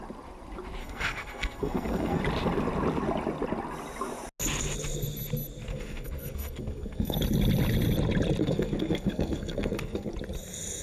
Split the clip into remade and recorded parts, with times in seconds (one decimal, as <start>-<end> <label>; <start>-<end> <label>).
0.0-0.8 recorded; 0.8-2.2 remade; 2.2-5.7 recorded; 5.7-7.2 remade; 7.2-8.4 recorded; 8.4-10.1 remade; 10.1-10.8 recorded